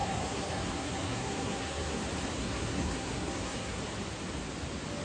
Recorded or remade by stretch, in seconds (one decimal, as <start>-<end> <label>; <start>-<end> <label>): 0.0-2.0 remade; 2.0-2.4 recorded; 2.4-3.8 remade; 3.8-5.0 recorded

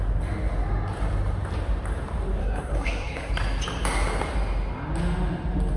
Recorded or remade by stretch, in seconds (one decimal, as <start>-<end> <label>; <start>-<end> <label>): 0.0-2.4 recorded; 2.4-3.3 remade; 3.3-5.8 recorded